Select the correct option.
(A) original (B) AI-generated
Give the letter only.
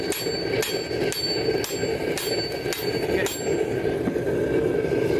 A